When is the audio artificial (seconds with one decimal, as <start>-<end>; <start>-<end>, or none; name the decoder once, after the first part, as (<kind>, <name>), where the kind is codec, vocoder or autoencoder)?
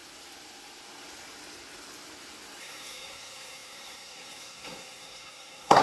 2.6-5.8 (codec, SNAC)